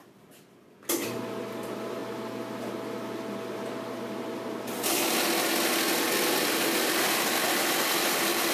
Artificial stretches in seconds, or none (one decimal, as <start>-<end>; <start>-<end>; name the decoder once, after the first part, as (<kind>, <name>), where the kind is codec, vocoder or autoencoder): none